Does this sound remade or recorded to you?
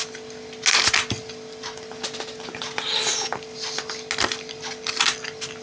recorded